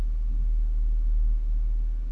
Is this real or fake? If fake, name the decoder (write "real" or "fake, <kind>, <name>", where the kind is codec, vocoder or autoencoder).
real